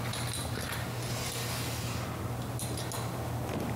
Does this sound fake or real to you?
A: real